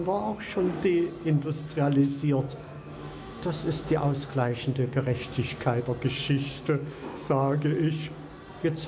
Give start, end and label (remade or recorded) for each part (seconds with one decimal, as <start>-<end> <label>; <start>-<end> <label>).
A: 0.0-2.0 recorded; 2.0-5.8 remade; 5.8-6.2 recorded; 6.2-7.2 remade; 7.2-8.9 recorded